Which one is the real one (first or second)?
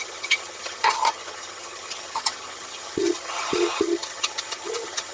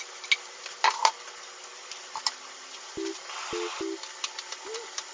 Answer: second